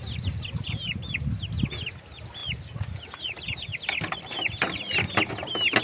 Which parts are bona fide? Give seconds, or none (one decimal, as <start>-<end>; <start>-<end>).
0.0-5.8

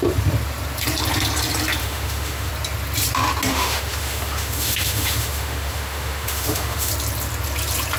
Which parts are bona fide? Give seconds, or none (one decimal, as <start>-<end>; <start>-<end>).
0.0-1.8; 2.5-3.5; 6.9-8.0

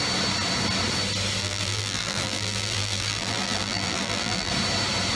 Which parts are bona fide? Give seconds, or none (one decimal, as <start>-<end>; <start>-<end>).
0.0-1.4; 4.5-5.2

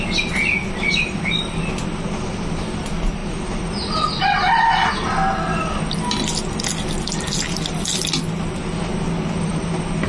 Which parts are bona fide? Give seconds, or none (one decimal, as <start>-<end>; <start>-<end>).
0.0-10.1

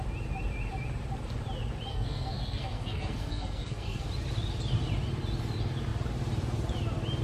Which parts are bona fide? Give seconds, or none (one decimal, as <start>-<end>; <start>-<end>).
0.0-1.9; 4.1-7.2

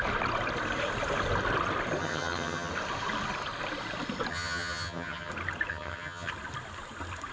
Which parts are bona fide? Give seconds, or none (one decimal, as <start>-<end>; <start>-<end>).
0.0-2.0; 2.7-4.3; 5.3-5.7; 6.3-7.3

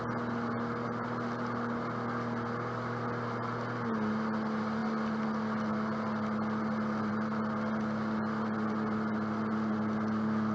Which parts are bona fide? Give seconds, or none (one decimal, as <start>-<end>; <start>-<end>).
0.0-10.5

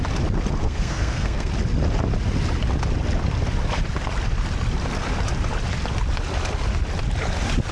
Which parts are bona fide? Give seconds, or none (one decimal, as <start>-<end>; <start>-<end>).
0.0-0.6; 1.5-7.7